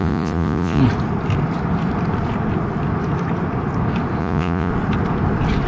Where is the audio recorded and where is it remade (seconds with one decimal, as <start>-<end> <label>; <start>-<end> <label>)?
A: 0.0-0.8 remade; 0.8-4.2 recorded; 4.2-4.7 remade; 4.7-5.7 recorded